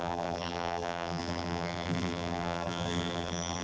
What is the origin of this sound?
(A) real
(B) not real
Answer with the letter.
B